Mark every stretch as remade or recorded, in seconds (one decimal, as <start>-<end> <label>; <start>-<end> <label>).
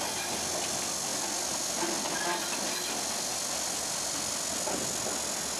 0.0-5.6 recorded